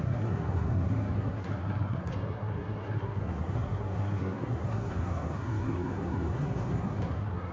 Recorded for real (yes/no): no